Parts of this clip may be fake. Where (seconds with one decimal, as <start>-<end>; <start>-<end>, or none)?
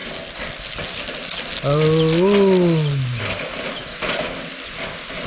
none